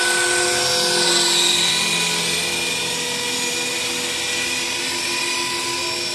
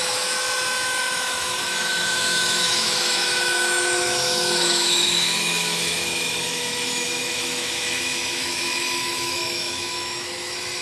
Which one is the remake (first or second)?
second